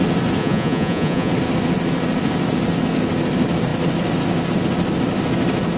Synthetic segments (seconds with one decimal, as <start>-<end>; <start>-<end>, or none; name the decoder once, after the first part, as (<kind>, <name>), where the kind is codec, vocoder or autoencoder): 0.4-1.3 (vocoder, Vocos)